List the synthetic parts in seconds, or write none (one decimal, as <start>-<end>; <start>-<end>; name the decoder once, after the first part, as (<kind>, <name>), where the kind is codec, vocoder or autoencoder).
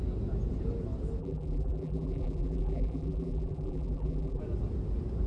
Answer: 1.2-4.4 (vocoder, BigVGAN v2)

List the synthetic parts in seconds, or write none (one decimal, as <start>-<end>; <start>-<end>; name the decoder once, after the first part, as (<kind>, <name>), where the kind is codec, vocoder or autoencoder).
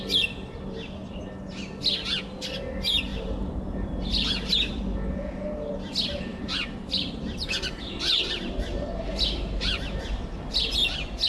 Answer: 3.1-4.8 (vocoder, BigVGAN v2); 6.3-10.9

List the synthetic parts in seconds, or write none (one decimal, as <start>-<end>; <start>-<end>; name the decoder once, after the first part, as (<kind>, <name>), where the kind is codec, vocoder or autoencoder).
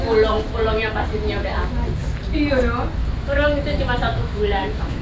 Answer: 3.0-3.6 (autoencoder, DAC-VAE); 4.1-5.0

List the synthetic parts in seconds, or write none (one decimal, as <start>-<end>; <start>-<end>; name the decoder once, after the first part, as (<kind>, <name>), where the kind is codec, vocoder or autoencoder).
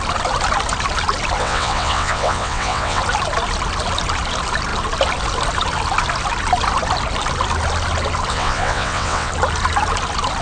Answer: 1.4-3.0 (vocoder, WaveNeXt); 8.3-9.3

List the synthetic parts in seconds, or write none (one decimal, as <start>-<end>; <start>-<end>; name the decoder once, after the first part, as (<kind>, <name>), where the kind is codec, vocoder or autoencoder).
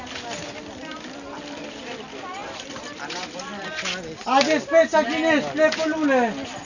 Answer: none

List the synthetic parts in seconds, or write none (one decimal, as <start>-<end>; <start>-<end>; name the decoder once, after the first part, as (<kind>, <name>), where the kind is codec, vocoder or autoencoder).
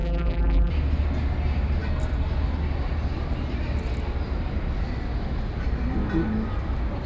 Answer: 0.0-0.7 (vocoder, BigVGAN v2)